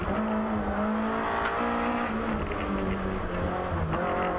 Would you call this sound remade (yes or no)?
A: no